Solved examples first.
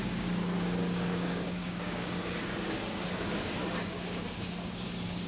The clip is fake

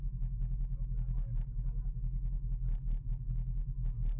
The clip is real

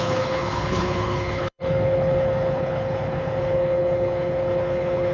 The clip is fake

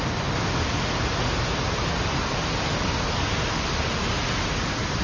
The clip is real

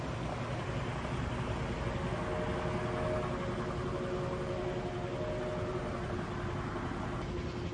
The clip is real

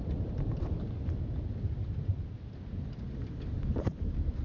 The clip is fake